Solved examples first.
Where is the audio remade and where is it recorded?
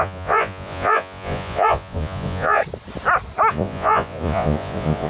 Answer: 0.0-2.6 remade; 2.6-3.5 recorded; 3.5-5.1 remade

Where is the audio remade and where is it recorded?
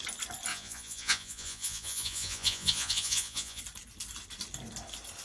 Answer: 0.0-0.5 recorded; 0.5-3.6 remade; 3.6-5.2 recorded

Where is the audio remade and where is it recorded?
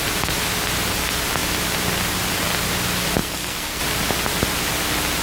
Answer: 0.0-3.2 recorded; 3.2-3.8 remade; 3.8-5.2 recorded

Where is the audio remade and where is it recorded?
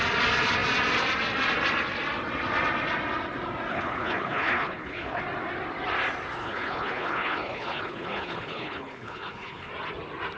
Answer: 0.0-3.7 recorded; 3.7-5.2 remade; 5.2-6.4 recorded; 6.4-9.7 remade; 9.7-10.4 recorded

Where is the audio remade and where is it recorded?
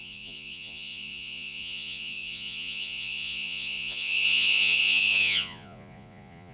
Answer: 0.0-6.5 remade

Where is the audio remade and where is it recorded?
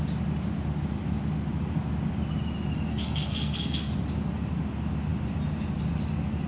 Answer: 0.0-2.9 recorded; 2.9-3.9 remade; 3.9-6.5 recorded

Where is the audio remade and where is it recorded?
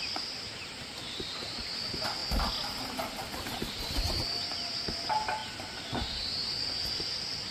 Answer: 0.0-7.5 recorded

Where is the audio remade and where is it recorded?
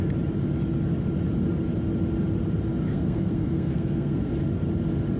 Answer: 0.0-2.9 recorded; 2.9-4.3 remade; 4.3-5.2 recorded